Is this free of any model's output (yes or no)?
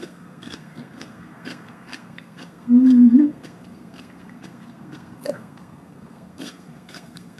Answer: no